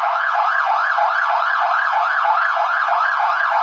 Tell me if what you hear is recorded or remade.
remade